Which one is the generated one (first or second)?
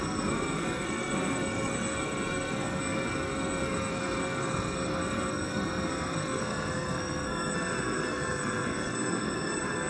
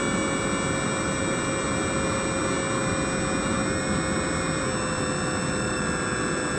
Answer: first